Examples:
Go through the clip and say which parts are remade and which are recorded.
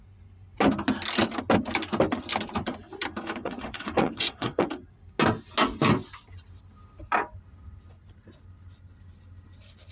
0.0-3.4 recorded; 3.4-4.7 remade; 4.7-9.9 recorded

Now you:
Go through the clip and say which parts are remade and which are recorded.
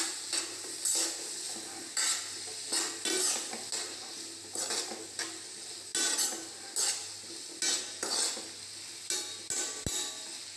0.0-10.6 recorded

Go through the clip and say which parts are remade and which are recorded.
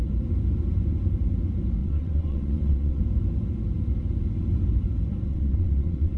0.0-1.8 recorded; 1.8-3.0 remade; 3.0-5.3 recorded; 5.3-6.2 remade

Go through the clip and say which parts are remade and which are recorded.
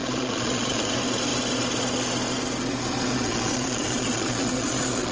0.0-0.9 remade; 0.9-3.1 recorded; 3.1-5.1 remade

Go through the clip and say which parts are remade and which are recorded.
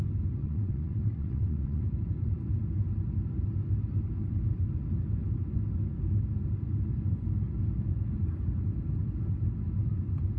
0.0-0.4 recorded; 0.4-1.8 remade; 1.8-10.4 recorded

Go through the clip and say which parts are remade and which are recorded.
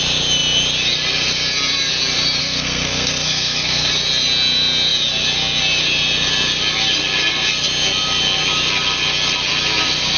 0.0-2.4 recorded; 2.4-3.9 remade; 3.9-10.2 recorded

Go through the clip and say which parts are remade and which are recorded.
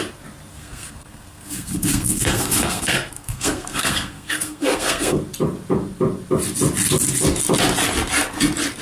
0.0-0.5 recorded; 0.5-5.2 remade; 5.2-8.8 recorded